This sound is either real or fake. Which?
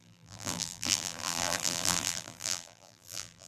fake